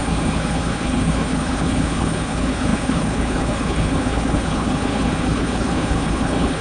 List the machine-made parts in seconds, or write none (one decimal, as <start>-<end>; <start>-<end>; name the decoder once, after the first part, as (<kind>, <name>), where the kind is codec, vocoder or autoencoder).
0.0-6.6 (codec, HILCodec)